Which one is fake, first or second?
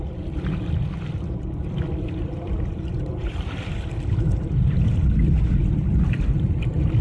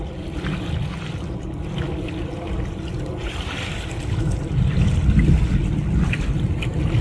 first